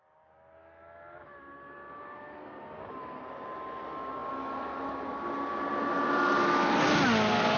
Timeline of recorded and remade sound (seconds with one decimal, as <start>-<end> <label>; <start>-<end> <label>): 0.0-7.6 recorded